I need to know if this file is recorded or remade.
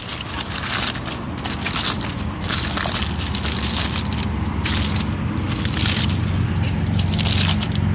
recorded